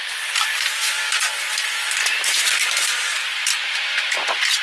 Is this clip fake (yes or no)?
no